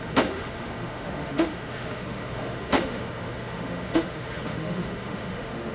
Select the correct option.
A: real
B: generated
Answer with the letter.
B